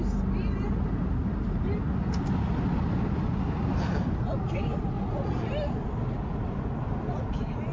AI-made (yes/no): no